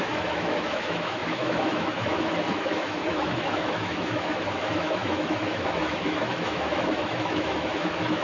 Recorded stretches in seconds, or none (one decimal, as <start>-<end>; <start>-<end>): none